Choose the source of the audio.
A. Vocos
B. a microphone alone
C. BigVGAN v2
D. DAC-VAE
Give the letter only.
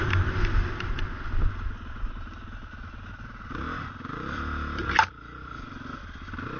C